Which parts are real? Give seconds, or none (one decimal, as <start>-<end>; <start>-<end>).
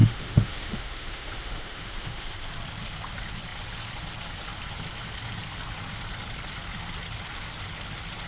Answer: 2.5-8.3